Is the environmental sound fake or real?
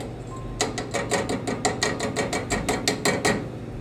real